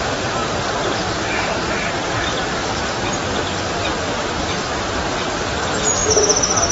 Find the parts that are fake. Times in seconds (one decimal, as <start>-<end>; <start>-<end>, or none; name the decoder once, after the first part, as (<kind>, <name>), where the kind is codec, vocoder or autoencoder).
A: 0.4-2.3 (vocoder, BigVGAN v2)